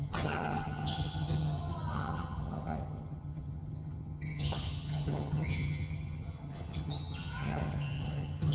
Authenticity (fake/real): fake